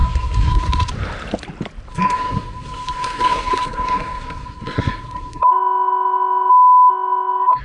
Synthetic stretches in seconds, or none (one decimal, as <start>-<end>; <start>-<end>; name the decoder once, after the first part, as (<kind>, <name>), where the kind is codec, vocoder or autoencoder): 0.0-0.9 (codec, SNAC); 1.9-6.5; 6.9-7.6